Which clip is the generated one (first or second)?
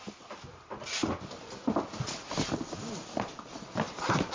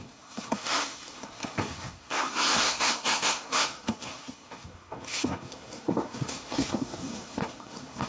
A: second